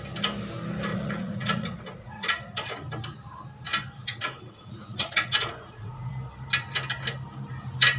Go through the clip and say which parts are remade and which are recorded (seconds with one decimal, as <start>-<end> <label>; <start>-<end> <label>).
0.0-0.9 recorded; 0.9-2.7 remade; 2.7-4.0 recorded; 4.0-6.1 remade; 6.1-8.0 recorded